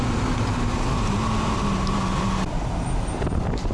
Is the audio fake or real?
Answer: real